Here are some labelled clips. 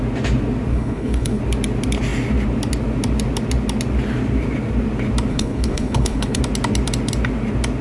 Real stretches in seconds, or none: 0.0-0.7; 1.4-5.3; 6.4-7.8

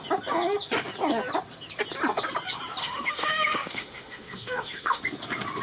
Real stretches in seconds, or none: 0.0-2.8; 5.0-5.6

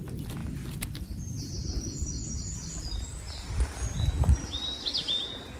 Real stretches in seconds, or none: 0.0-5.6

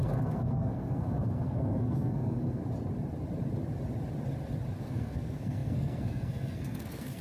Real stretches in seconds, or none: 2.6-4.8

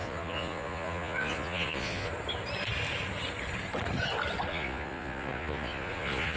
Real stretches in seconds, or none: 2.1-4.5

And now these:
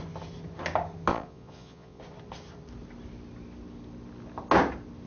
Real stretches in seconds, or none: 0.0-1.1; 2.0-5.1

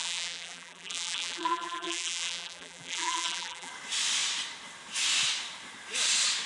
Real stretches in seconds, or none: 3.7-6.5